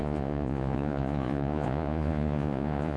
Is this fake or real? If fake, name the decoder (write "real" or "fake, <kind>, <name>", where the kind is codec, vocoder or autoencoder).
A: fake, vocoder, Vocos